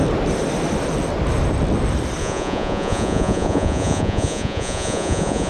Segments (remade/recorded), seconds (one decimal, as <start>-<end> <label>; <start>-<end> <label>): 0.0-2.2 recorded; 2.2-5.5 remade